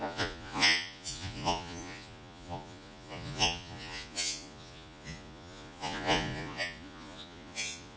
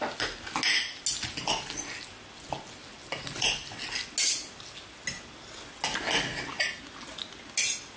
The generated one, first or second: first